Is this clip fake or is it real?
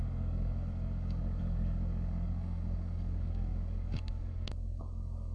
fake